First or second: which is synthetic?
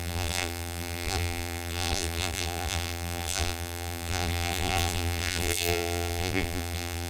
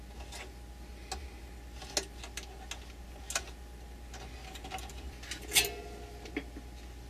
first